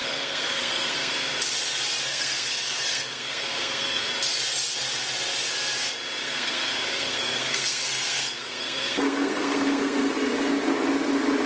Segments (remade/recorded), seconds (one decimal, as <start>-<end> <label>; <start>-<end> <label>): 0.0-1.3 remade; 1.3-2.1 recorded; 2.1-4.1 remade; 4.1-6.2 recorded; 6.2-10.1 remade; 10.1-11.5 recorded